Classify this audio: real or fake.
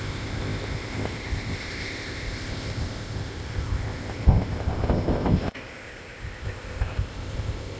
fake